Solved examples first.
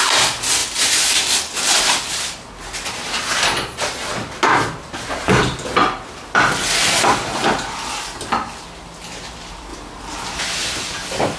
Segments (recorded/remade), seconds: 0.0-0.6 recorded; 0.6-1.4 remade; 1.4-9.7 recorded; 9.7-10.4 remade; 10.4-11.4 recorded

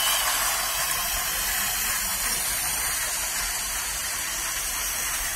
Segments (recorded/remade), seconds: 0.0-5.4 recorded

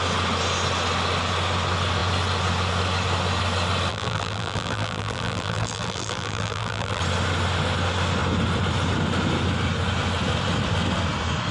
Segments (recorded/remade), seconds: 0.0-3.9 recorded; 3.9-7.0 remade; 7.0-11.5 recorded

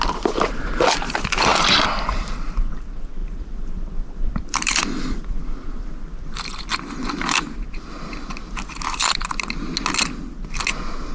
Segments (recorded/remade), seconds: 0.0-1.5 recorded; 1.5-2.3 remade; 2.3-3.2 recorded; 3.2-6.9 remade; 6.9-11.1 recorded

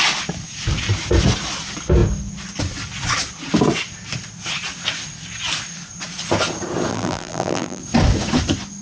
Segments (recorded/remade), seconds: 0.0-6.9 recorded; 6.9-7.8 remade; 7.8-8.8 recorded